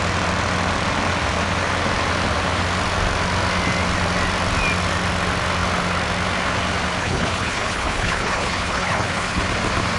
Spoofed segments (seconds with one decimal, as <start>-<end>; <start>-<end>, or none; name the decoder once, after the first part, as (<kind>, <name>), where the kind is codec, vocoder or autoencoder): 7.0-9.4 (codec, HILCodec)